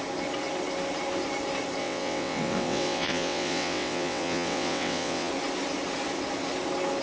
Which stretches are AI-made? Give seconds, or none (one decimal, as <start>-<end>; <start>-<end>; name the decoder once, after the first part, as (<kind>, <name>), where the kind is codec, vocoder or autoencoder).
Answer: 1.8-5.3 (vocoder, WaveNeXt)